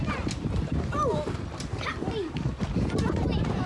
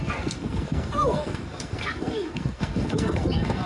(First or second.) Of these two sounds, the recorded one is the first